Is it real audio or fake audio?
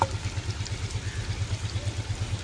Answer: real